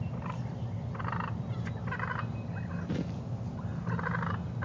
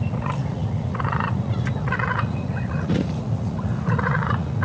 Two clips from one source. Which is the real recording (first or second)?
first